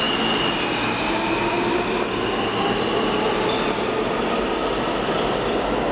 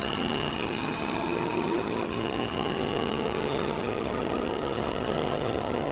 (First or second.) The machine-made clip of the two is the second